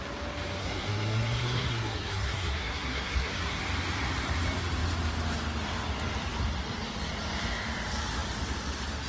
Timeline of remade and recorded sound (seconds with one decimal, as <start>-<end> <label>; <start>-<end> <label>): 0.0-0.6 recorded; 0.6-3.6 remade; 3.6-9.1 recorded